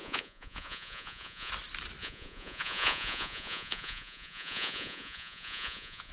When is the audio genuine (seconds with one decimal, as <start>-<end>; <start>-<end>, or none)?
1.5-2.0